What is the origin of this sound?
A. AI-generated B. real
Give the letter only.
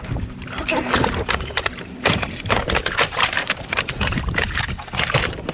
A